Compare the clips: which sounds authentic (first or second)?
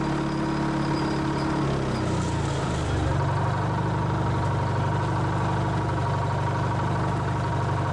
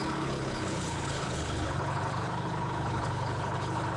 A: first